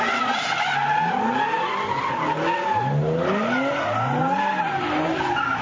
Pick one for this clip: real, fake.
real